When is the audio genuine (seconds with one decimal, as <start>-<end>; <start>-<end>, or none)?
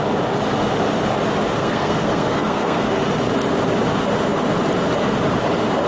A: 0.0-1.6; 2.9-5.9